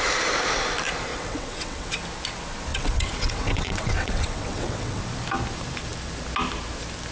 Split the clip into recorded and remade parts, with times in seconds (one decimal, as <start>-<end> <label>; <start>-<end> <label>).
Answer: 0.0-1.1 recorded; 1.1-2.0 remade; 2.0-2.7 recorded; 2.7-5.0 remade; 5.0-7.1 recorded